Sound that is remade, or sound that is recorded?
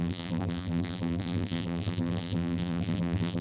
remade